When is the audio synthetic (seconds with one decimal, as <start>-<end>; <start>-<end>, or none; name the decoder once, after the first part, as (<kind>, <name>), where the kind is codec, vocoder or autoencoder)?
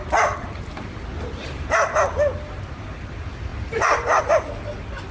1.4-2.0 (vocoder, BigVGAN v2); 3.5-4.2